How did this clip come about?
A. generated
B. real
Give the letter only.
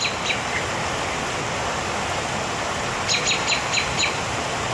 B